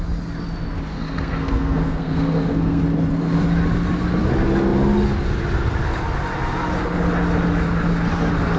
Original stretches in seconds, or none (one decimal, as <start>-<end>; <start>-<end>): 0.0-0.9; 2.8-8.6